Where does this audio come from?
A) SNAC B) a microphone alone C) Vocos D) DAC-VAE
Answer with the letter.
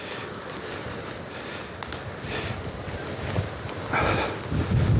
B